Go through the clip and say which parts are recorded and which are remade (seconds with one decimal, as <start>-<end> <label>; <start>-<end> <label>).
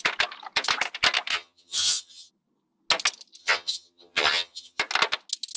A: 0.0-1.3 recorded; 1.3-2.3 remade; 2.3-3.4 recorded; 3.4-4.8 remade; 4.8-5.6 recorded